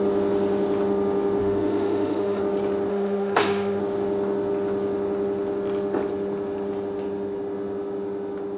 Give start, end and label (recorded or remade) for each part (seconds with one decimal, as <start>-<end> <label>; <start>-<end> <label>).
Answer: 0.0-1.4 recorded; 1.4-2.4 remade; 2.4-2.9 recorded; 2.9-3.8 remade; 3.8-8.6 recorded